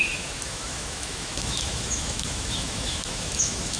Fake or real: fake